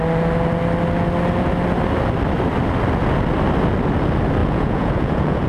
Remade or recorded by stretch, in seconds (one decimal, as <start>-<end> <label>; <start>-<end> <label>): 0.0-4.4 recorded; 4.4-5.5 remade